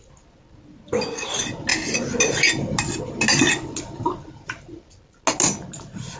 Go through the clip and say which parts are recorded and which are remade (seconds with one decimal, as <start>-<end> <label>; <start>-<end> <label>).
0.0-6.2 recorded

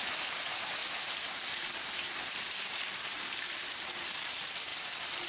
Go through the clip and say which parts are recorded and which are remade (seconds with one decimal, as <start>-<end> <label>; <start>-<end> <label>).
0.0-5.3 remade

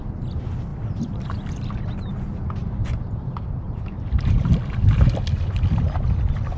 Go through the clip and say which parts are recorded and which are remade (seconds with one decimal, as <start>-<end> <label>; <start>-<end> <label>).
0.0-2.6 recorded; 2.6-4.2 remade; 4.2-6.6 recorded

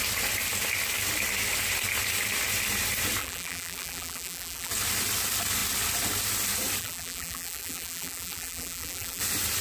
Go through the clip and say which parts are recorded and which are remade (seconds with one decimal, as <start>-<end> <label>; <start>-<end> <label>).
0.0-3.2 recorded; 3.2-4.7 remade; 4.7-6.8 recorded; 6.8-9.2 remade; 9.2-9.6 recorded

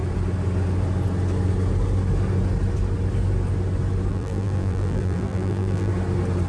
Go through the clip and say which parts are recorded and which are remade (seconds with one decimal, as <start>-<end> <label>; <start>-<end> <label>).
0.0-4.1 recorded; 4.1-5.9 remade; 5.9-6.5 recorded